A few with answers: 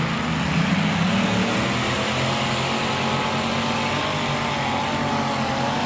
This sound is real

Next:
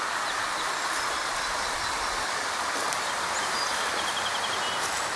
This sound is real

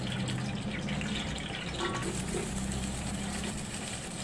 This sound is real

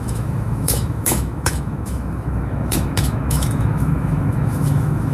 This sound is fake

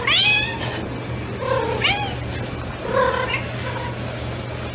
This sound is real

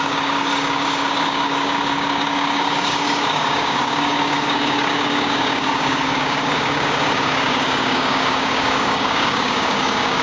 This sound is fake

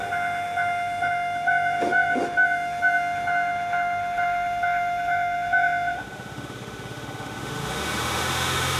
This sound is fake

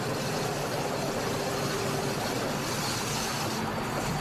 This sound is real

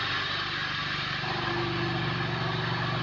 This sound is real